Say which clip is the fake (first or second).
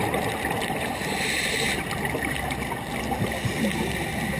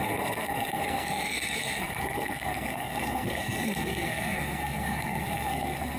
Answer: second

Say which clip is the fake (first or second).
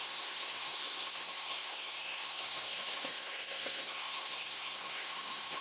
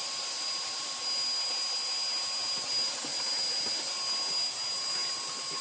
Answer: first